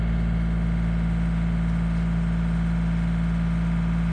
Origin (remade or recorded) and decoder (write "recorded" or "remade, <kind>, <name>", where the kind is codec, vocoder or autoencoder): recorded